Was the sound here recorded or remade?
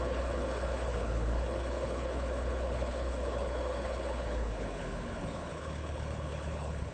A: remade